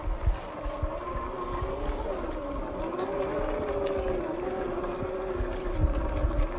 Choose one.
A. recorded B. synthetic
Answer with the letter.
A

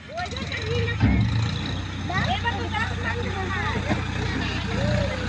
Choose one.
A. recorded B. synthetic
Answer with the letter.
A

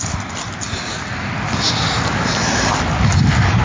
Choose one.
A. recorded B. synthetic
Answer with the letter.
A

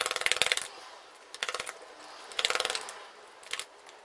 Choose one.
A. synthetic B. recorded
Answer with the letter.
B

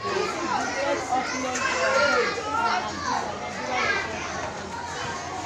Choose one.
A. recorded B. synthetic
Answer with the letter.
A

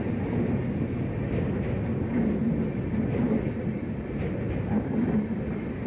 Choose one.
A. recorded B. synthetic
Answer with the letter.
A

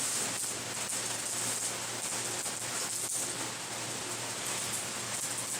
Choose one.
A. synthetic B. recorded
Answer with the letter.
B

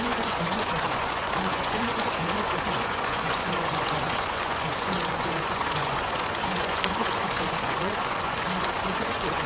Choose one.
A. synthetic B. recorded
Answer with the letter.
A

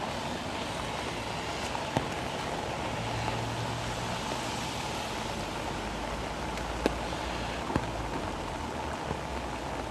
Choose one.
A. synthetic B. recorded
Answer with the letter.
B